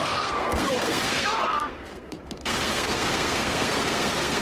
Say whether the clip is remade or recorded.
remade